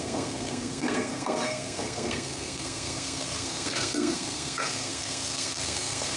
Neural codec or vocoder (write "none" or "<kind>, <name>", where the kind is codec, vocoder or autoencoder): codec, SNAC